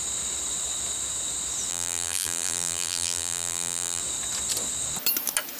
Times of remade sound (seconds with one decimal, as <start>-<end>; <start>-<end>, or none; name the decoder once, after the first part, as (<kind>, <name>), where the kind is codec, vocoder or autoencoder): 1.7-4.0 (vocoder, BigVGAN v2)

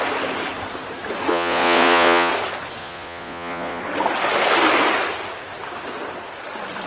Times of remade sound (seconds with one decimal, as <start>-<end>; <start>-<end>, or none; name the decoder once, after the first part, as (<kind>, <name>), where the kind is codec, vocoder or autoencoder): 1.3-2.3 (vocoder, Vocos); 2.8-3.8

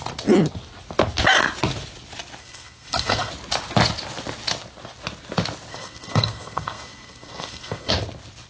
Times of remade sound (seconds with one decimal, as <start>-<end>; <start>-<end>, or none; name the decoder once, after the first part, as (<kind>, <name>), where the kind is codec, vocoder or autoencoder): 2.4-3.3 (codec, SNAC); 5.7-7.9